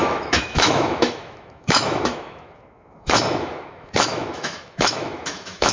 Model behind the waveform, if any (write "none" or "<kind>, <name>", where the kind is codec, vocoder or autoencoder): autoencoder, DAC-VAE